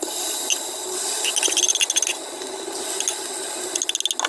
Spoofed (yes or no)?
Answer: no